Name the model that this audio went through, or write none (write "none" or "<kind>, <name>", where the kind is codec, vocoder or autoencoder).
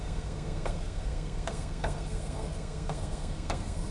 codec, SNAC